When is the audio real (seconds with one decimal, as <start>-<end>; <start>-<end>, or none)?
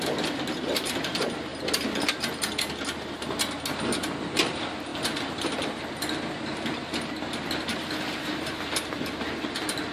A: 0.0-9.9